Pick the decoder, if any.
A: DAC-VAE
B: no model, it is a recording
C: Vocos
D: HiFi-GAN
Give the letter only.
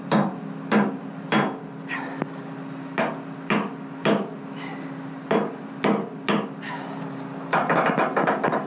B